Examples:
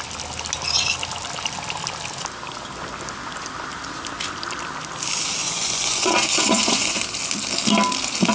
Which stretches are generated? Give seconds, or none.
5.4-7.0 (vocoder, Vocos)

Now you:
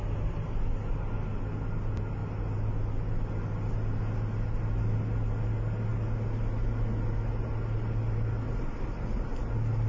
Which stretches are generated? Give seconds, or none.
none

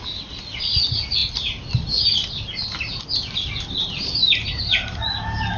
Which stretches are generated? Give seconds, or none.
none